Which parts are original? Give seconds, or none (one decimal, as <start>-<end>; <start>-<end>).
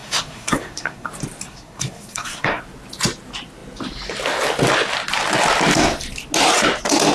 1.1-1.5; 2.6-7.1